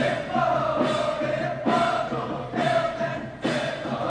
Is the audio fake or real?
fake